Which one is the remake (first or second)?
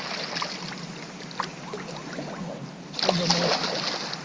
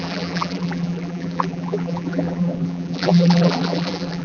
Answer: second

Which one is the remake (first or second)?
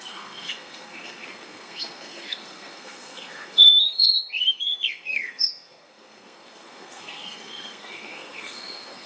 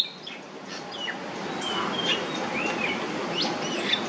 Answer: first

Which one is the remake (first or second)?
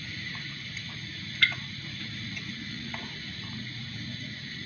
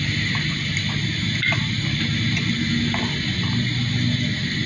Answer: first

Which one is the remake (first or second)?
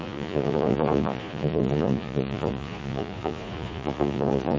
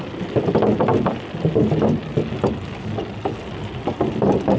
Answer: first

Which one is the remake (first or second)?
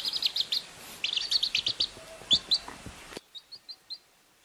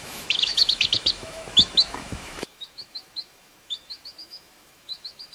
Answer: second